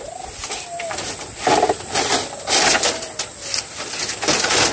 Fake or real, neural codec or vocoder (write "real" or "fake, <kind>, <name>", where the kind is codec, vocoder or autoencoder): real